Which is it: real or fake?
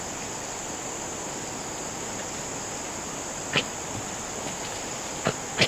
real